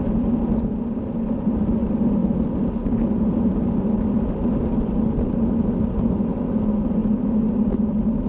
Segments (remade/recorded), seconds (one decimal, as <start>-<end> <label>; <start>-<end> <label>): 0.0-8.3 recorded